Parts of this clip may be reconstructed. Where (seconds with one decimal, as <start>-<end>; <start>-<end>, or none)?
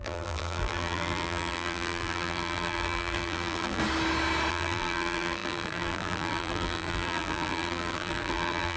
0.0-3.8; 4.5-8.8